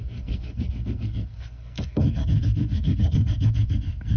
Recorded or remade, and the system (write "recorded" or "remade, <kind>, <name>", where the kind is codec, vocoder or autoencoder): remade, codec, SNAC